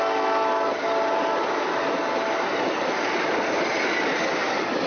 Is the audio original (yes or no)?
yes